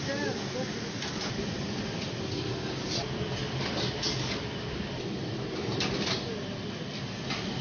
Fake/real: real